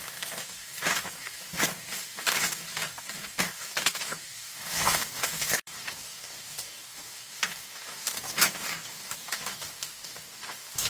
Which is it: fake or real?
fake